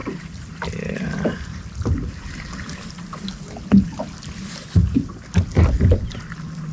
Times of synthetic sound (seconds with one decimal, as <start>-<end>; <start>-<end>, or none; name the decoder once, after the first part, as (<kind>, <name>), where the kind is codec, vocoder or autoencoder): none